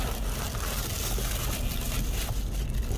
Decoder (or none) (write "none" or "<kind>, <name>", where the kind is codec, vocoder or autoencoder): none